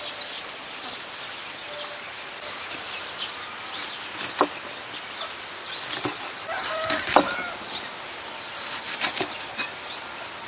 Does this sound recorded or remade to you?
recorded